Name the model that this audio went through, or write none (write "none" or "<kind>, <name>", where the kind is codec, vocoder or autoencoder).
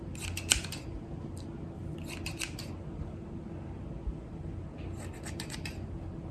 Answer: none